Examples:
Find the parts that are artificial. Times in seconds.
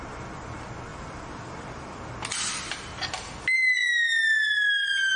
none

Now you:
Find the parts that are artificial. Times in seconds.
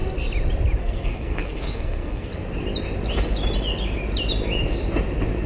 0.8-2.3 (codec, SNAC)